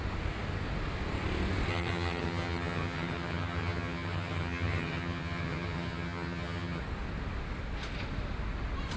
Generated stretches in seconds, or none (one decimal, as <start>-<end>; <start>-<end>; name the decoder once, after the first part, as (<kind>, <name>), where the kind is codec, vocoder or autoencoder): 1.7-6.8 (vocoder, HiFi-GAN)